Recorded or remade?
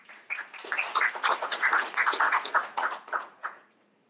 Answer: remade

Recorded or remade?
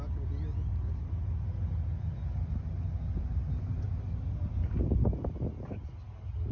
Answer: recorded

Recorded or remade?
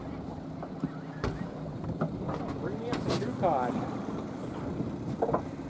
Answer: recorded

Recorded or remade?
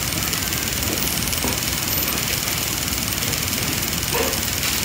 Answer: recorded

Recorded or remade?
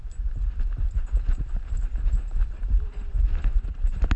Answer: recorded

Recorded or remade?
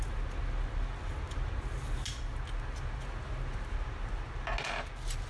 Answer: recorded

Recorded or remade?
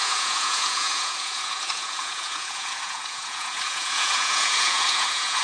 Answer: remade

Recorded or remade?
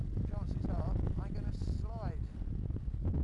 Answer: recorded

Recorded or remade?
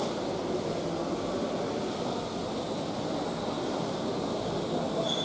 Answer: recorded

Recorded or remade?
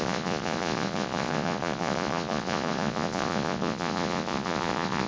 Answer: remade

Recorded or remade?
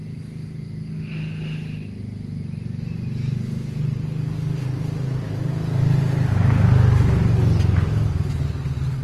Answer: recorded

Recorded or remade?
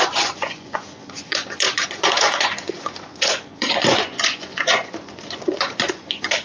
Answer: remade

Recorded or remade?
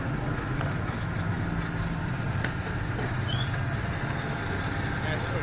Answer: recorded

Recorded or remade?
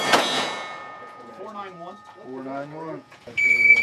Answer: remade